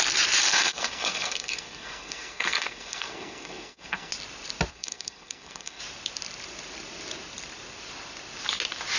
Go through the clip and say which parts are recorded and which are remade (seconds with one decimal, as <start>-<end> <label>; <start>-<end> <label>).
0.0-0.5 recorded; 0.5-4.1 remade; 4.1-4.7 recorded; 4.7-5.8 remade; 5.8-9.0 recorded